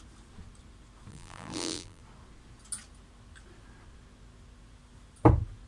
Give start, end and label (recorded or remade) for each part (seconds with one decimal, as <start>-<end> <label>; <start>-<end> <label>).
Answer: 0.0-1.1 recorded; 1.1-2.0 remade; 2.0-5.7 recorded